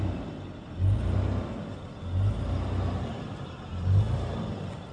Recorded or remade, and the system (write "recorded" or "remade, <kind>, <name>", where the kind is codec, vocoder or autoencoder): recorded